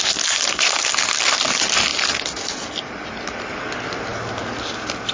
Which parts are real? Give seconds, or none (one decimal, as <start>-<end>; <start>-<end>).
0.0-5.1